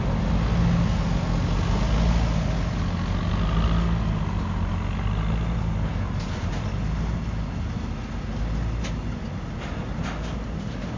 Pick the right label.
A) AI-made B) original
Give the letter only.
B